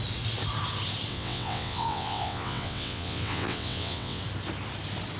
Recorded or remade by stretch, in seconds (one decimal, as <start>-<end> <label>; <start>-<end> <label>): 0.0-1.1 recorded; 1.1-4.2 remade; 4.2-5.2 recorded